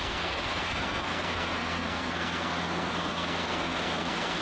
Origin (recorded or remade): remade